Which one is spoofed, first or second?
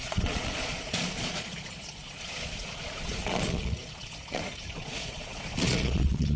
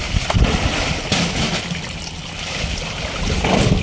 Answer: first